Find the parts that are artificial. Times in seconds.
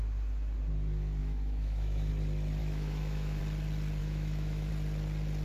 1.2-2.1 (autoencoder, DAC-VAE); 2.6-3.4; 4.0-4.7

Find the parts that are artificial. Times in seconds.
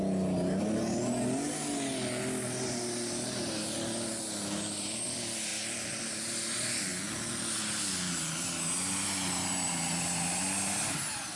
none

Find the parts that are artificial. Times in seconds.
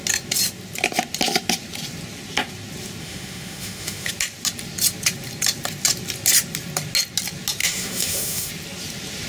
3.0-4.1 (autoencoder, DAC-VAE); 7.6-8.5